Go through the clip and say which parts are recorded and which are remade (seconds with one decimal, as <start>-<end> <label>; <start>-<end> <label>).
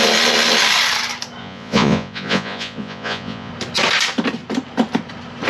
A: 0.0-1.4 recorded; 1.4-3.5 remade; 3.5-5.5 recorded